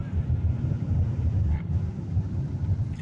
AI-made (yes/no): no